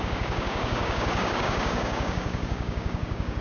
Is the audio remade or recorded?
remade